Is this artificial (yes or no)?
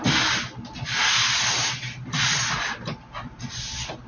no